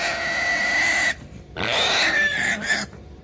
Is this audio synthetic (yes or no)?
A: yes